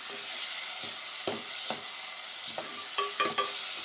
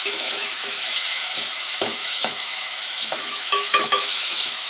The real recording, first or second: first